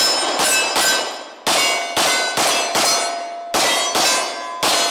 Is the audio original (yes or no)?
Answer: yes